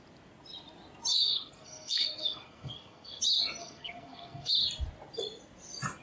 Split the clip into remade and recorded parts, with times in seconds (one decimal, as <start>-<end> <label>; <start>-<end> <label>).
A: 0.0-1.1 recorded; 1.1-3.2 remade; 3.2-3.6 recorded; 3.6-4.5 remade; 4.5-6.0 recorded